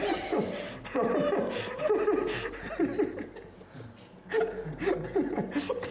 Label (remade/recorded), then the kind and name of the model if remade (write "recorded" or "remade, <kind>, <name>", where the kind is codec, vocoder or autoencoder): recorded